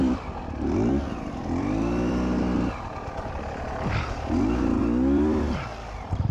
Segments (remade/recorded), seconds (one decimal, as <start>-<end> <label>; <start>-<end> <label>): 0.0-3.3 remade; 3.3-4.8 recorded; 4.8-6.3 remade